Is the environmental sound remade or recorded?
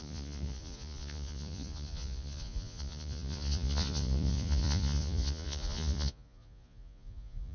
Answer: remade